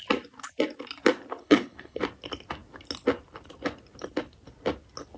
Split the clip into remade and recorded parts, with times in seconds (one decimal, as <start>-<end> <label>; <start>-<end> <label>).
0.0-1.4 recorded; 1.4-2.0 remade; 2.0-5.2 recorded

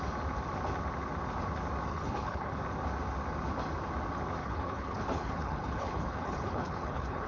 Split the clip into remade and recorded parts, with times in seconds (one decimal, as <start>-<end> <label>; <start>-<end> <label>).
0.0-1.9 recorded; 1.9-2.6 remade; 2.6-4.4 recorded; 4.4-7.3 remade

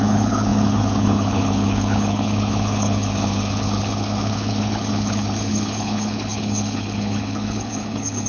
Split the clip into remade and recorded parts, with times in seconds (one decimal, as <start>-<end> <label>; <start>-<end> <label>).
0.0-8.3 remade

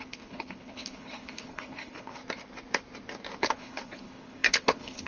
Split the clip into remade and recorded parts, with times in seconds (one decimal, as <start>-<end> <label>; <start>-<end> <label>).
0.0-2.2 remade; 2.2-3.4 recorded; 3.4-5.1 remade